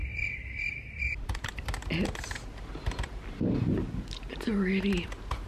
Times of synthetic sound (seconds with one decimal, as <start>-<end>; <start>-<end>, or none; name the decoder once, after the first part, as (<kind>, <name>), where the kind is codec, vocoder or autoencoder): none

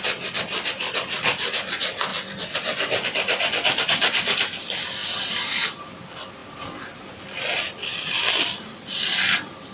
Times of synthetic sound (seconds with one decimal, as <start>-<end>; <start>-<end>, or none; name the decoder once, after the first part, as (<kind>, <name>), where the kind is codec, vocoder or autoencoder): none

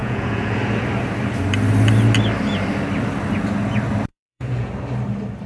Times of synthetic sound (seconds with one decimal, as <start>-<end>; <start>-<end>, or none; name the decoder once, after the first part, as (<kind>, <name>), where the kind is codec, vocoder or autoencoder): 0.0-0.6 (vocoder, Vocos); 4.1-4.7

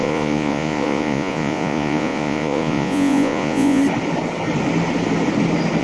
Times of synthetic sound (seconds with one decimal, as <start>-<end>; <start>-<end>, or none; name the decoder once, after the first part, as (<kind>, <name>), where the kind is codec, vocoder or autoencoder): 0.0-3.8 (vocoder, Vocos)